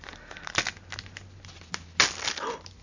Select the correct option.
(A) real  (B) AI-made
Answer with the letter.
A